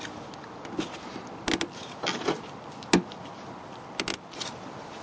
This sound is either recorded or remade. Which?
recorded